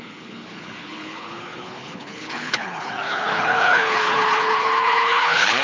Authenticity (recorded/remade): remade